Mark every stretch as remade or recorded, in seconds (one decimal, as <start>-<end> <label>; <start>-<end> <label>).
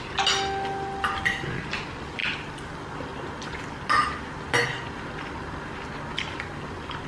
0.0-7.1 recorded